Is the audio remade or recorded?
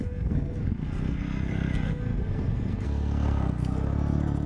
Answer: remade